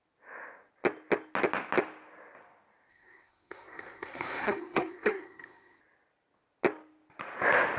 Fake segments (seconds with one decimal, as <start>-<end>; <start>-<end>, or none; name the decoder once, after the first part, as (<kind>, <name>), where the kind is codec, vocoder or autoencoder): 2.9-5.8 (codec, SNAC)